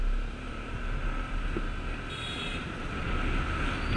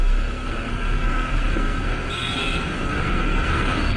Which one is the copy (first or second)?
second